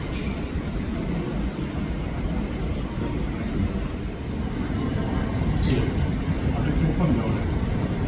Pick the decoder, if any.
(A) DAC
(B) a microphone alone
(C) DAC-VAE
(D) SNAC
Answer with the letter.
B